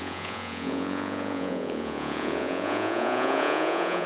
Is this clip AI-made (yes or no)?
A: yes